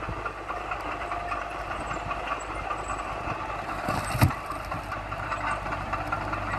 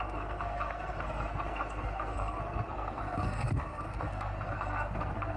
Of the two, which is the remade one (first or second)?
second